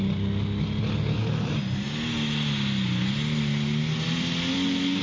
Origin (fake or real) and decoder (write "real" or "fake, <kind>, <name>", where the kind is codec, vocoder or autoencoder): real